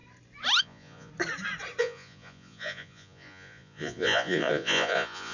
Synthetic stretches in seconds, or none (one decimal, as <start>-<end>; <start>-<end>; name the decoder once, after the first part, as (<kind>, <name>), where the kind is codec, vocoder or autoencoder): 0.6-1.1 (vocoder, Vocos); 1.8-5.3